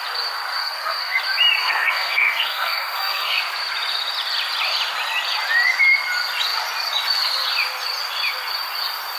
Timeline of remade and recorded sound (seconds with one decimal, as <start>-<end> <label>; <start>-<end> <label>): 0.0-0.6 recorded; 0.6-1.2 remade; 1.2-1.6 recorded; 1.6-3.4 remade; 3.4-9.2 recorded